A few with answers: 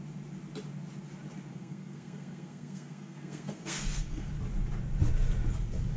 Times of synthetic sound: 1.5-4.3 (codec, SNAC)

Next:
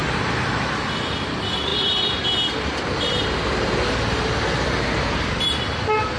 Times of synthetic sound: 0.0-0.7 (vocoder, BigVGAN v2)